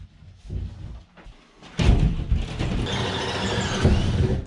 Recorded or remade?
recorded